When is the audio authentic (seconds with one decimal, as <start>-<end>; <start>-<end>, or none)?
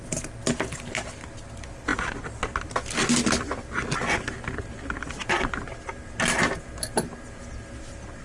0.0-8.2